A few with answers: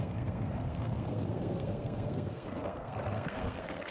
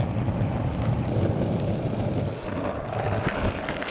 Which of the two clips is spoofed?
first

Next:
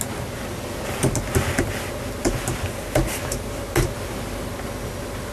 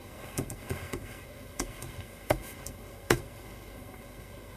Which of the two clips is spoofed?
second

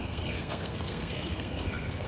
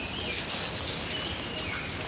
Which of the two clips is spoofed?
first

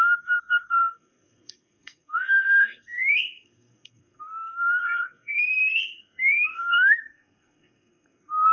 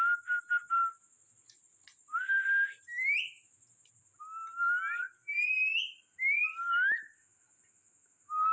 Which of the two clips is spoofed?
first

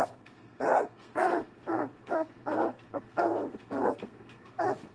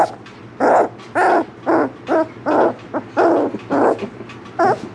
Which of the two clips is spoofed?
first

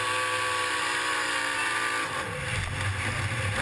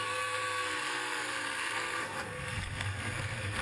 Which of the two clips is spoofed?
second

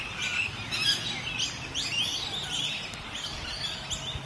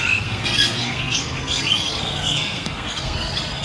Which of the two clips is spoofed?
second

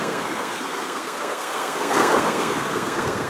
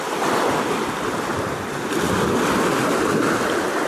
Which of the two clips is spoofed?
first